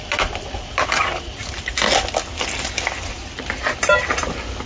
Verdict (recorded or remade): recorded